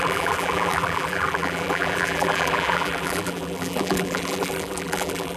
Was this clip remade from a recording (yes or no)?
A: yes